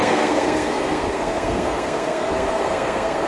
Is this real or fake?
fake